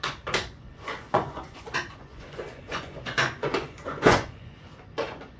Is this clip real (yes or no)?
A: no